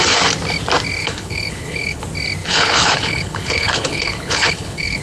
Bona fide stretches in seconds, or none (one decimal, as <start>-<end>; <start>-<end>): 0.0-1.0; 2.0-2.4